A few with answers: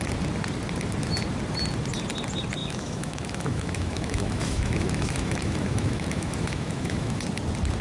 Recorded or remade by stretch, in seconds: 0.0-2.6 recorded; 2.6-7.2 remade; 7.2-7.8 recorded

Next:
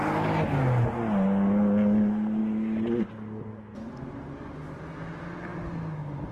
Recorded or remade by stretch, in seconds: 0.0-6.3 recorded

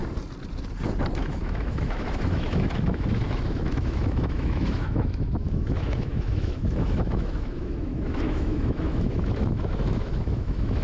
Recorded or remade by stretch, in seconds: 0.0-1.2 recorded; 1.2-10.8 remade

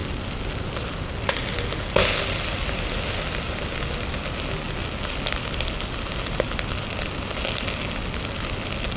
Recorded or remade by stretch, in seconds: 0.0-9.0 recorded

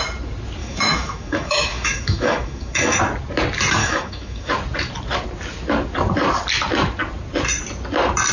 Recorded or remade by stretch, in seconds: 0.0-0.6 recorded; 0.6-3.0 remade; 3.0-3.8 recorded; 3.8-4.5 remade; 4.5-8.3 recorded

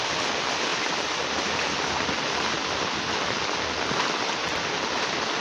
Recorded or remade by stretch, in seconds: 0.0-5.4 recorded

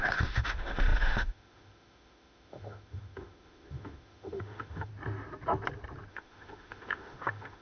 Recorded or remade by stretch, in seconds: 0.0-4.9 remade; 4.9-6.1 recorded; 6.1-7.6 remade

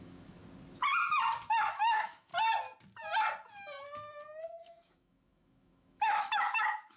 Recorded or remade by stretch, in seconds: 0.0-0.4 remade; 0.4-1.7 recorded; 1.7-2.3 remade; 2.3-4.4 recorded; 4.4-7.0 remade